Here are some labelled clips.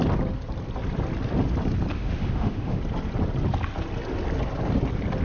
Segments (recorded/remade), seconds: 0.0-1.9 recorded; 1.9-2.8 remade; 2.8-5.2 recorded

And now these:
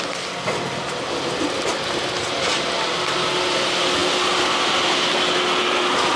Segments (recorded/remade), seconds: 0.0-6.2 recorded